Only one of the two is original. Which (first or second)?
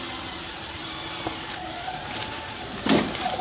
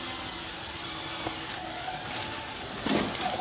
second